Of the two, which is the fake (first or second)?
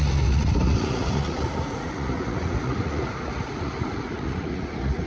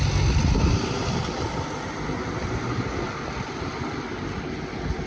first